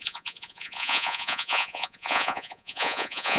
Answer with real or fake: fake